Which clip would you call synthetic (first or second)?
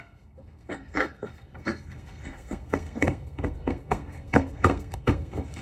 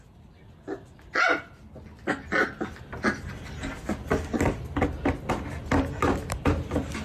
first